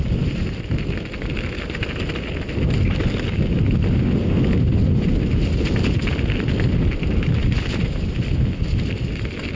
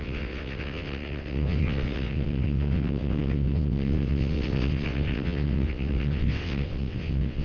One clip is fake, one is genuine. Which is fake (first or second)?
second